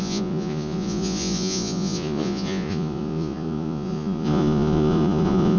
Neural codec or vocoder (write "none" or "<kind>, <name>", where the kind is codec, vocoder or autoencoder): vocoder, Vocos